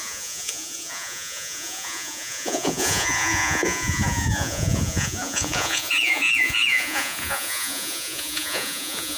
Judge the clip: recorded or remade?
remade